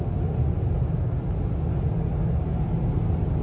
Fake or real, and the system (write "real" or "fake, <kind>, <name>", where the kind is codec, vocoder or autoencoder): real